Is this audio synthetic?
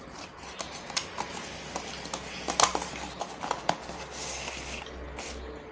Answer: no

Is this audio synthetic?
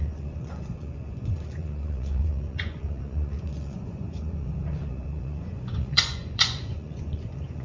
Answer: yes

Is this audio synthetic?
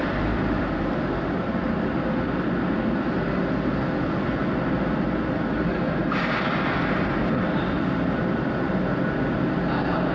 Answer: no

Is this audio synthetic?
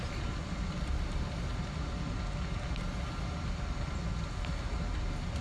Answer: no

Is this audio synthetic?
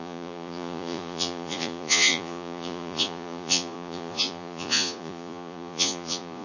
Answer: yes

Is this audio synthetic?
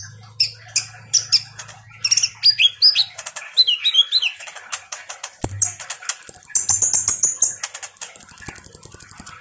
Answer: no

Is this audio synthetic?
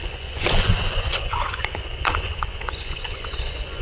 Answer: yes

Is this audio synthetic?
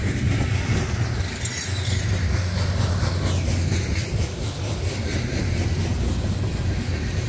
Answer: no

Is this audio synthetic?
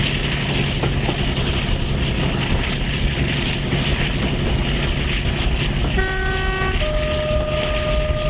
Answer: no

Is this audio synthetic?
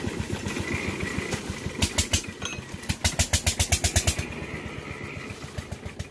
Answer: no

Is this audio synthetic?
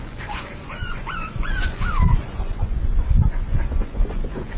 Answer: yes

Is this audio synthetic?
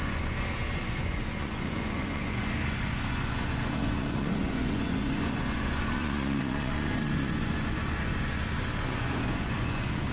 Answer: yes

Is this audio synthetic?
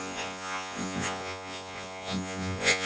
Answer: yes